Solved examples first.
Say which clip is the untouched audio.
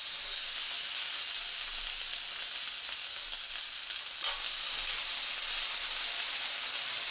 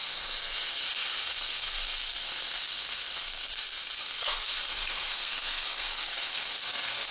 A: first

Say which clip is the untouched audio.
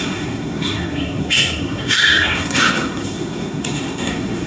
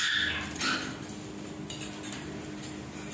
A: second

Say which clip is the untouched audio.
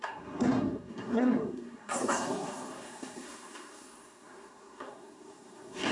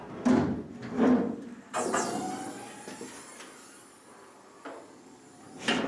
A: second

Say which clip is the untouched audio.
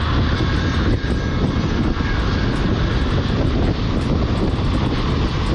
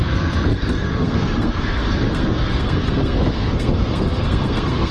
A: first